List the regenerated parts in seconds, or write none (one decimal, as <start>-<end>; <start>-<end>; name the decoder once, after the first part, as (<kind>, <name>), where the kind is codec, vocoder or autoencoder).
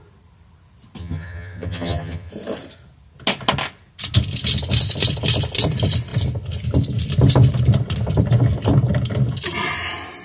1.0-2.3 (vocoder, HiFi-GAN)